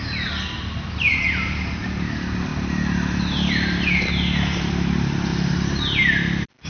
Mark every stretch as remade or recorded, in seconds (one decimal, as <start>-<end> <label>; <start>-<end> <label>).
0.0-5.3 recorded; 5.3-5.8 remade; 5.8-6.7 recorded